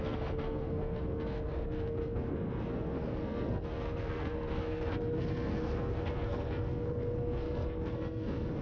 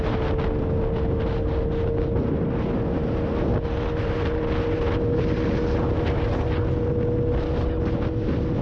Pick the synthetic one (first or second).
first